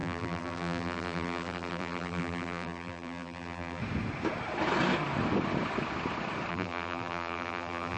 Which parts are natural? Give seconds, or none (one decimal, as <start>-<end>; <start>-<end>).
3.8-6.5